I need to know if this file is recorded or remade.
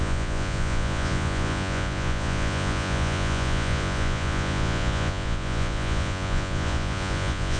remade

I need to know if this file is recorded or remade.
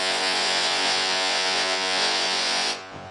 remade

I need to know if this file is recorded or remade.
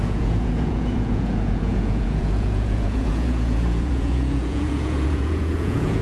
remade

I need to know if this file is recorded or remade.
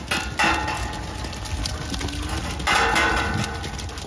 recorded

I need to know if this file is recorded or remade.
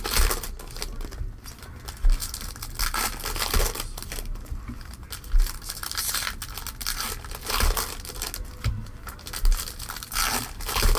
recorded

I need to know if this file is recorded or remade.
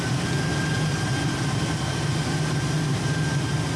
recorded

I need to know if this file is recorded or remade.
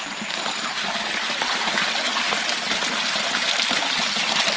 recorded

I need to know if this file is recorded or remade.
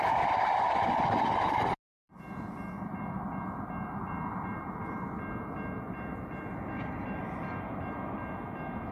recorded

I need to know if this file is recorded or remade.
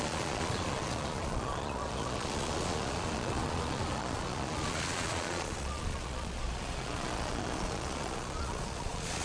remade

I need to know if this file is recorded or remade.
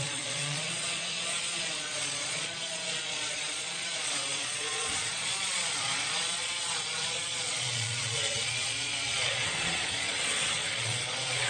remade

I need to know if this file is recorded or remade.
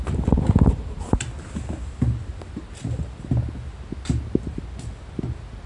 recorded